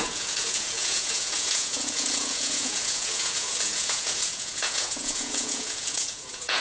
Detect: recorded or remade remade